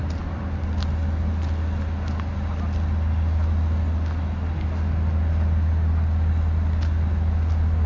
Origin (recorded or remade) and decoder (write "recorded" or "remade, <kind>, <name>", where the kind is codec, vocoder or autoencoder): recorded